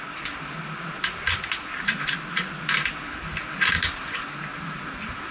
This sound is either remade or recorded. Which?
recorded